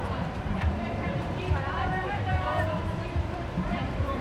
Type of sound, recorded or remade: remade